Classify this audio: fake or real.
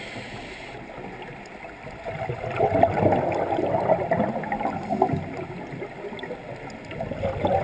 real